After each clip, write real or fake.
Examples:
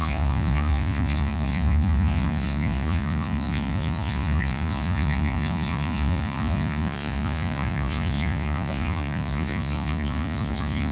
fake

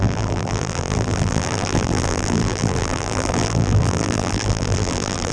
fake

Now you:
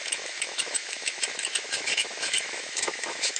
fake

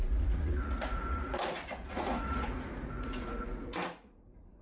fake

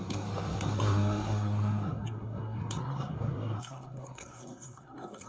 fake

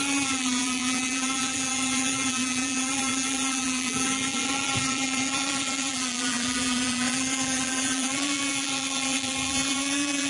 fake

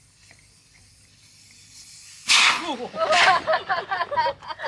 real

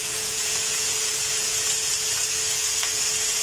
fake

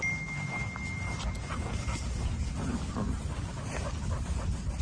real